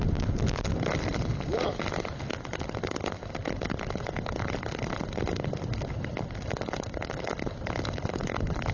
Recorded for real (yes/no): yes